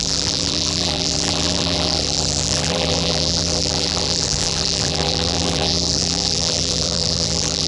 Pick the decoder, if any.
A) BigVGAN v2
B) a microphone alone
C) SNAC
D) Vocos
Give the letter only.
A